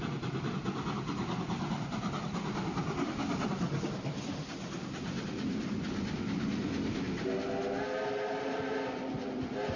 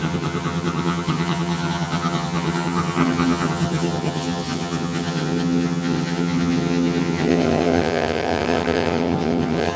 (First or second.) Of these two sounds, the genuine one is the first